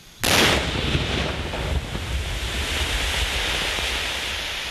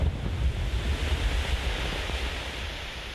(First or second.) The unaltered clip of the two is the first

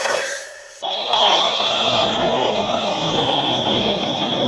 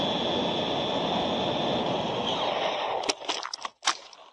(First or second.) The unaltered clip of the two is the second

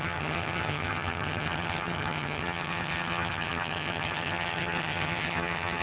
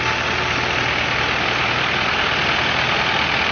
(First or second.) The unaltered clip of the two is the second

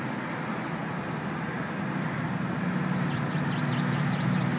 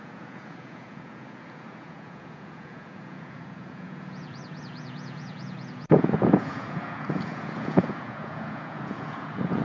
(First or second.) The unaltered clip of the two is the first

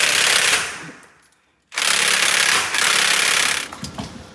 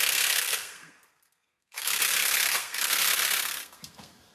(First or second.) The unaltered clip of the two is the first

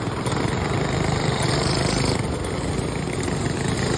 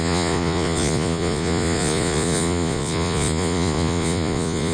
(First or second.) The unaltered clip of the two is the first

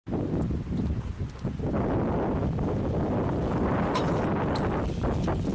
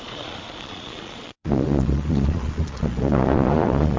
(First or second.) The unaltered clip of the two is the first